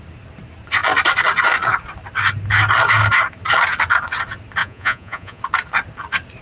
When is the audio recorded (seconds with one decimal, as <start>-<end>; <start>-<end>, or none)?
0.0-4.6; 5.4-6.4